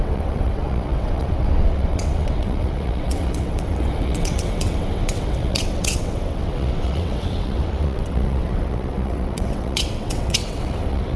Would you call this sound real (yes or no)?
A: no